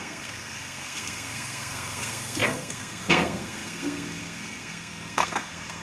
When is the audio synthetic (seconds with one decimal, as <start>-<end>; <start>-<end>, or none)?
0.0-5.8